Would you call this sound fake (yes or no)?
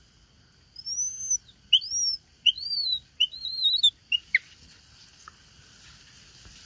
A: no